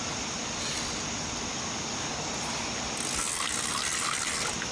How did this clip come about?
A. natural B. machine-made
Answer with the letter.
A